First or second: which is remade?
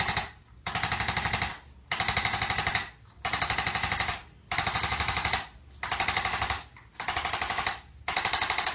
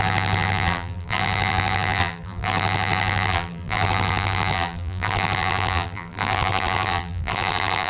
second